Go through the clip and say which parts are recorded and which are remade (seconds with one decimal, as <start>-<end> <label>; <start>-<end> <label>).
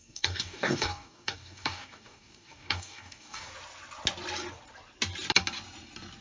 0.0-3.5 remade; 3.5-6.2 recorded